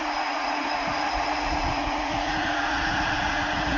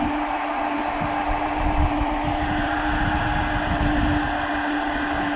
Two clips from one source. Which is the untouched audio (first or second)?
second